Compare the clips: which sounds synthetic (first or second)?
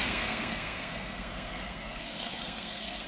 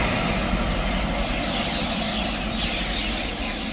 first